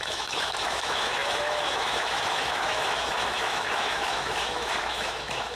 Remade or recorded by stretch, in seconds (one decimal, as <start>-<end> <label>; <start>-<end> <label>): 0.0-5.6 remade